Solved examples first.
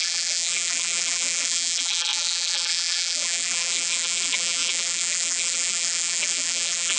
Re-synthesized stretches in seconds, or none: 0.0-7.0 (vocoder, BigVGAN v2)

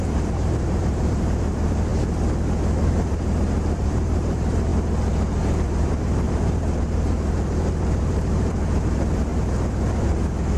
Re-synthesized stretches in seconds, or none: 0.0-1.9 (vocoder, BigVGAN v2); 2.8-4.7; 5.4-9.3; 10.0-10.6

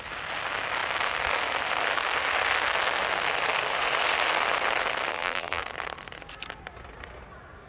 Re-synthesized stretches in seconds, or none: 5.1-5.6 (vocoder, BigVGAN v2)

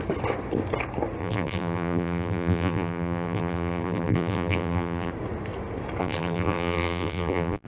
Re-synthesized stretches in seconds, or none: 1.2-5.1 (vocoder, BigVGAN v2); 6.0-7.7

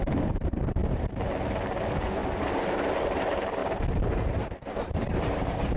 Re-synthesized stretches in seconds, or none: 0.0-0.8 (vocoder, BigVGAN v2); 1.8-2.2; 2.9-5.8

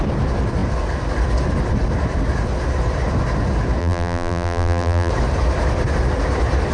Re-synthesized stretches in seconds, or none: 3.8-5.1 (vocoder, BigVGAN v2)

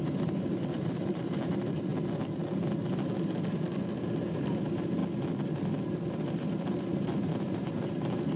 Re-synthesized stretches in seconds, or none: 0.0-1.9 (vocoder, BigVGAN v2); 4.3-5.0; 5.9-8.4